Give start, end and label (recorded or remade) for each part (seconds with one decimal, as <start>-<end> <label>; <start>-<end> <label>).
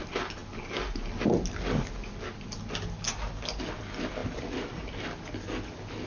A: 0.0-6.1 recorded